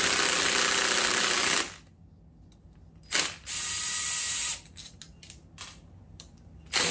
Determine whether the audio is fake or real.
real